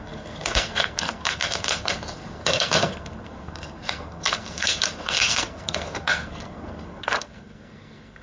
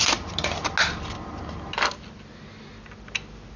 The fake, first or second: first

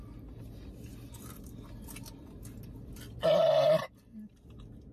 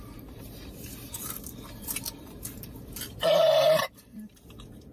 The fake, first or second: second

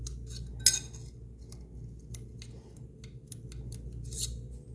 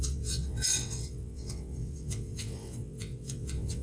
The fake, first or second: second